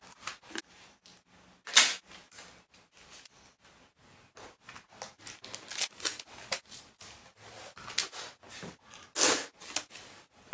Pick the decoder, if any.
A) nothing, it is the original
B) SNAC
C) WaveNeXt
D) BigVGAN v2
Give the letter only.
A